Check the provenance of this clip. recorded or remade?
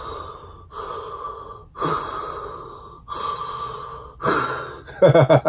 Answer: recorded